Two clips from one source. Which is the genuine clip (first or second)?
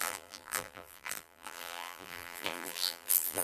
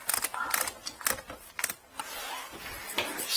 second